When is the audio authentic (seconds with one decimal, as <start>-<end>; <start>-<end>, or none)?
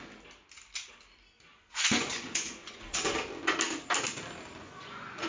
0.0-1.5; 3.1-4.6